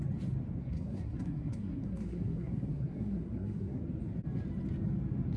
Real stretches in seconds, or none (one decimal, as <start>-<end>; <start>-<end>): 0.0-0.6; 3.8-5.4